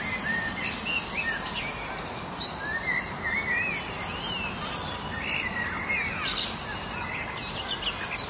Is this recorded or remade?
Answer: recorded